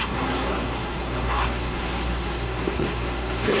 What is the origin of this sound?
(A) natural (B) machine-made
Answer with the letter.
B